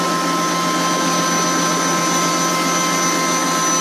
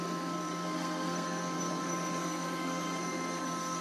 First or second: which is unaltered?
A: first